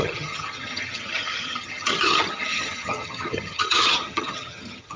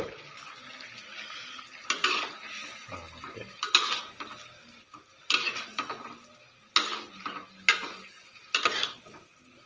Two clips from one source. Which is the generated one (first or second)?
first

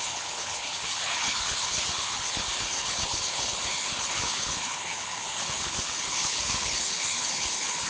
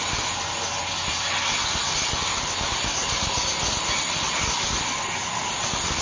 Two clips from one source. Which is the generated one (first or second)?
first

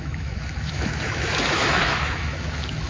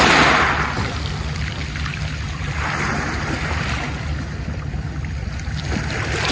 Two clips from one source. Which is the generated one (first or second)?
first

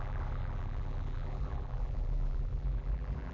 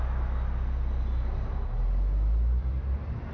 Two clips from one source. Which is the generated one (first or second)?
first